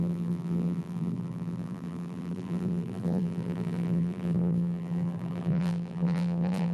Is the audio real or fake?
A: fake